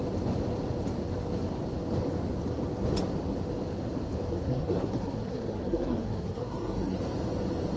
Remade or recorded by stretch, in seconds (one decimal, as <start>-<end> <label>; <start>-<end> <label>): 0.0-4.3 recorded; 4.3-7.0 remade; 7.0-7.8 recorded

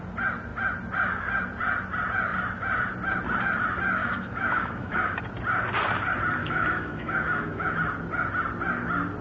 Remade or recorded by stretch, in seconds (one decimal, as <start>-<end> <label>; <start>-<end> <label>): 0.0-4.0 recorded; 4.0-5.2 remade; 5.2-6.4 recorded; 6.4-7.7 remade; 7.7-9.2 recorded

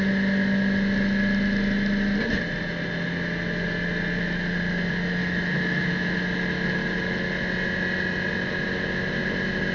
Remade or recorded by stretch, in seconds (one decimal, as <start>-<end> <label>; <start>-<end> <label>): 0.0-5.2 recorded; 5.2-5.9 remade; 5.9-9.7 recorded

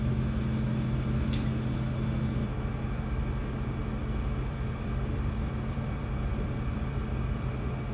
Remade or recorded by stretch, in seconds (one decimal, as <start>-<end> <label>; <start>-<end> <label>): 0.0-4.0 recorded; 4.0-7.0 remade; 7.0-7.9 recorded

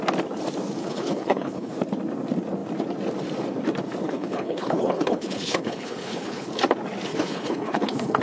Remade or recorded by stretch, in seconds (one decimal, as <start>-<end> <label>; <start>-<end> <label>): 0.0-0.8 recorded; 0.8-1.7 remade; 1.7-4.0 recorded; 4.0-6.5 remade; 6.5-7.1 recorded; 7.1-8.2 remade

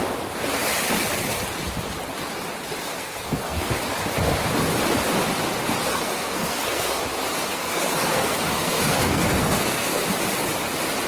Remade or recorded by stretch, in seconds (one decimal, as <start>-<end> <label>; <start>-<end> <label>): 0.0-2.8 recorded; 2.8-3.7 remade; 3.7-5.9 recorded; 5.9-7.0 remade; 7.0-7.5 recorded; 7.5-10.0 remade; 10.0-11.1 recorded

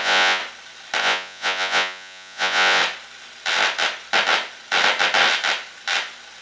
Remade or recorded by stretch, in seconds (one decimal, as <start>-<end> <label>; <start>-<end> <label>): 0.0-0.4 remade; 0.4-1.0 recorded; 1.0-2.8 remade; 2.8-6.4 recorded